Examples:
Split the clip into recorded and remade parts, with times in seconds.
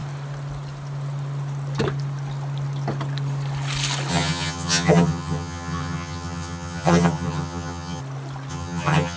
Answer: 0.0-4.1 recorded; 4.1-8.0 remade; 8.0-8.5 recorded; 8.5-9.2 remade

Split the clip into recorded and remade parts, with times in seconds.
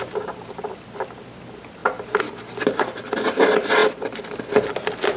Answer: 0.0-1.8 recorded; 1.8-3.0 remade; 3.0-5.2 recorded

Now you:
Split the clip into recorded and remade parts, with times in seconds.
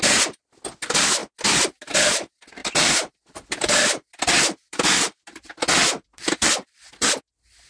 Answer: 0.0-2.6 recorded; 2.6-7.2 remade; 7.2-7.7 recorded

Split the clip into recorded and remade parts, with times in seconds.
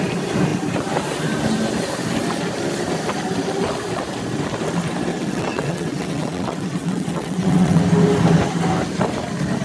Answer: 0.0-5.1 recorded; 5.1-7.8 remade; 7.8-9.6 recorded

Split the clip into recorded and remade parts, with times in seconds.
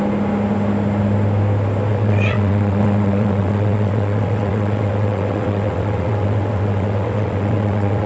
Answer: 0.0-1.9 recorded; 1.9-8.1 remade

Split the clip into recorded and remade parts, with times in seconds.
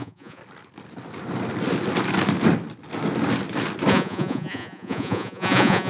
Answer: 0.0-0.4 remade; 0.4-3.9 recorded; 3.9-5.9 remade